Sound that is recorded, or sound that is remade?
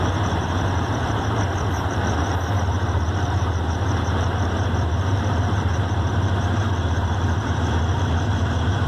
remade